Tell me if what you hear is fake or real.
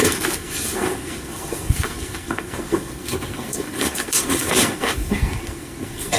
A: fake